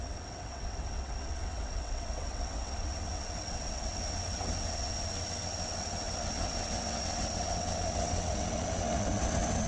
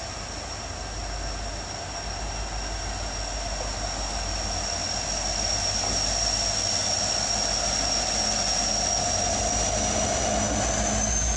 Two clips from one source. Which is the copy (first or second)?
first